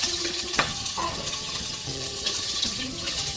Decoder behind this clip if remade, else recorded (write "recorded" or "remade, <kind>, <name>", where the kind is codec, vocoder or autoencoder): remade, vocoder, HiFi-GAN